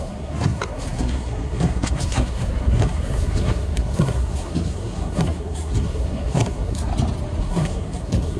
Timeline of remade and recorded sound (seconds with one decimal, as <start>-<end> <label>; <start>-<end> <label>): 0.0-6.9 remade; 6.9-7.4 recorded; 7.4-8.4 remade